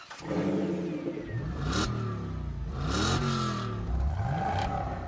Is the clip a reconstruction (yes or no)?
no